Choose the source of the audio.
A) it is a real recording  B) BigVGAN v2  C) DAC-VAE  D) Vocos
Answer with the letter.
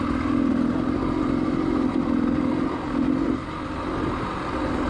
A